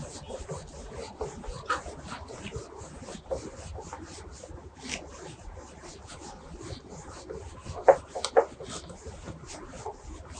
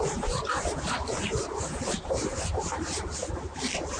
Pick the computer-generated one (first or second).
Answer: second